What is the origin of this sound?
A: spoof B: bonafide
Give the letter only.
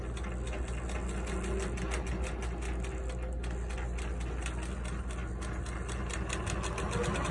B